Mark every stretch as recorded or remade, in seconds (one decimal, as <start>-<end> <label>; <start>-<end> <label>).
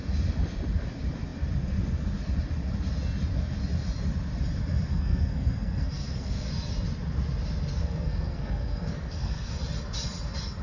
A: 0.0-4.9 recorded; 4.9-6.5 remade; 6.5-7.8 recorded; 7.8-9.5 remade; 9.5-10.6 recorded